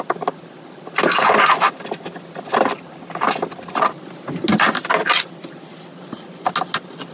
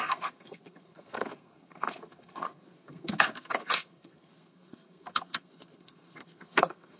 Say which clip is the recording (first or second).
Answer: first